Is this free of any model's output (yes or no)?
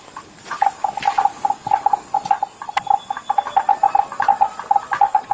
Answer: yes